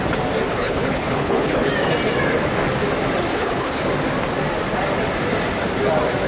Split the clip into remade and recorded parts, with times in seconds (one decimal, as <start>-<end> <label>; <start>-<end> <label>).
0.0-0.5 recorded; 0.5-1.7 remade; 1.7-3.3 recorded; 3.3-3.8 remade; 3.8-6.3 recorded